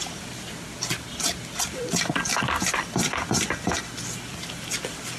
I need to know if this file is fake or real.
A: real